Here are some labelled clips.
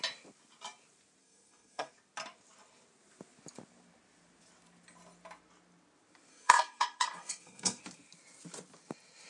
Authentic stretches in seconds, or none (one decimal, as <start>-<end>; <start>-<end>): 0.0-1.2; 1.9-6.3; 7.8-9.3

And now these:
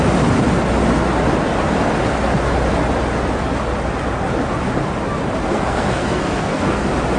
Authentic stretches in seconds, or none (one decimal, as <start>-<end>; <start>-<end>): 0.0-5.5; 6.8-7.2

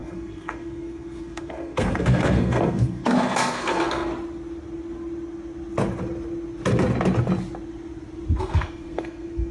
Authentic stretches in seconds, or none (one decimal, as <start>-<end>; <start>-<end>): 4.1-8.4

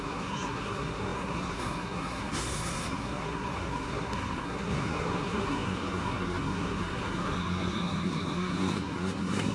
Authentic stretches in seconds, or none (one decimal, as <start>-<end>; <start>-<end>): none

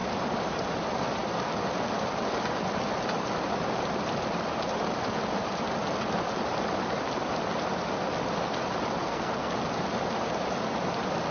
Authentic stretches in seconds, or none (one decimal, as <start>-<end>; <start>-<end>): 0.0-9.0; 9.5-11.3